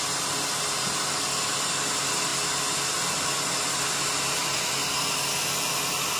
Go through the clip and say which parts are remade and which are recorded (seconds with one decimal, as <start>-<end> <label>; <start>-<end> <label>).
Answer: 0.0-6.2 recorded